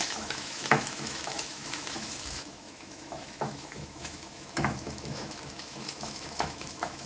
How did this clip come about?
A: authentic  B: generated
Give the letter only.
B